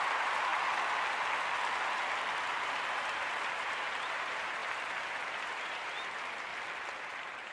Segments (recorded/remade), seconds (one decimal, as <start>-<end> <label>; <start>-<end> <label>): 0.0-0.5 remade; 0.5-2.5 recorded; 2.5-6.5 remade; 6.5-7.0 recorded; 7.0-7.5 remade